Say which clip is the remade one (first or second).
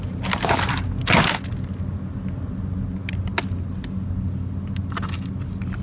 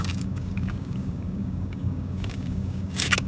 second